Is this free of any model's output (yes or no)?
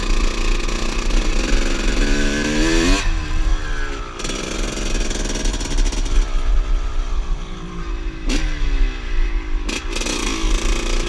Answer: yes